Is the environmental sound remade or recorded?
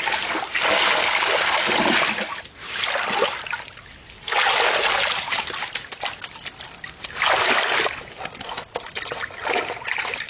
recorded